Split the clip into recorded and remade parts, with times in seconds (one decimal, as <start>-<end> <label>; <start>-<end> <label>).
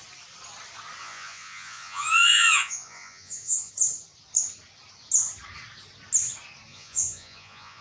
0.0-1.0 recorded; 1.0-3.7 remade; 3.7-6.7 recorded; 6.7-7.8 remade